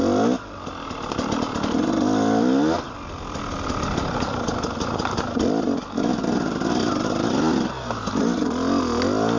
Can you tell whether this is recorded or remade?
recorded